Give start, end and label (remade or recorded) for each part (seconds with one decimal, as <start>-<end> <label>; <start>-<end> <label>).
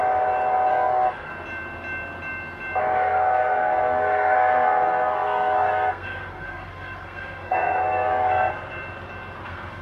0.0-0.7 recorded; 0.7-1.3 remade; 1.3-2.8 recorded; 2.8-8.5 remade; 8.5-9.4 recorded; 9.4-9.8 remade